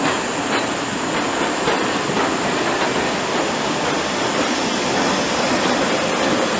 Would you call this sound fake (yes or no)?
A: no